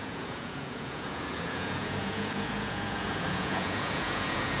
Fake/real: fake